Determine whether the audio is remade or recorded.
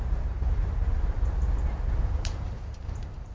remade